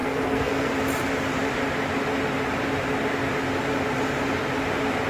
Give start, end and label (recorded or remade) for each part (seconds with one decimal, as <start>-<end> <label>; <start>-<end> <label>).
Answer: 0.0-0.7 remade; 0.7-5.1 recorded